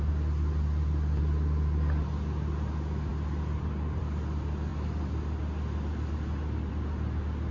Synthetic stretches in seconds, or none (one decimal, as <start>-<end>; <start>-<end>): none